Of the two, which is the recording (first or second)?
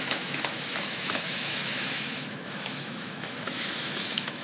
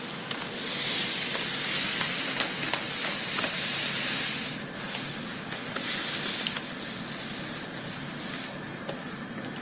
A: second